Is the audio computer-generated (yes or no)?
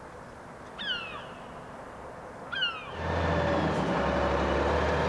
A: no